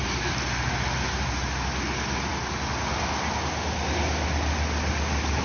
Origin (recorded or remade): recorded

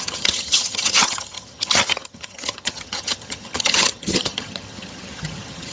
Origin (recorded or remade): remade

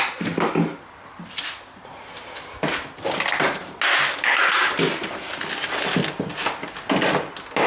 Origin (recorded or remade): recorded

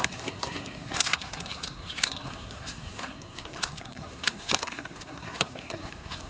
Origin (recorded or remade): remade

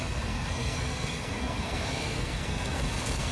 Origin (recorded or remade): remade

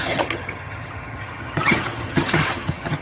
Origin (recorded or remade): remade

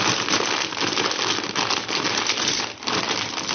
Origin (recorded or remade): recorded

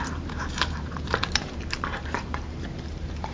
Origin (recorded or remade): remade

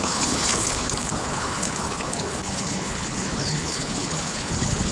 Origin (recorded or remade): remade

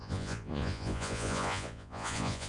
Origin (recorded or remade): remade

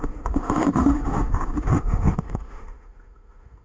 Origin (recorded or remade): remade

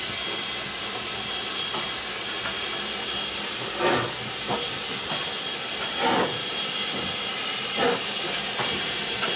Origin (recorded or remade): recorded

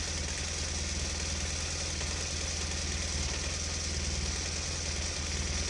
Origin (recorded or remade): recorded